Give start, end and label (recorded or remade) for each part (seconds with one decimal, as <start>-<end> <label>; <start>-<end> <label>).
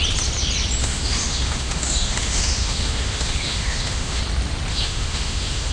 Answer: 0.0-0.8 recorded; 0.8-4.2 remade; 4.2-4.7 recorded; 4.7-5.7 remade